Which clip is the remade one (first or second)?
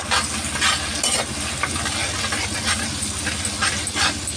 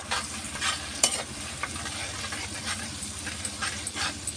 second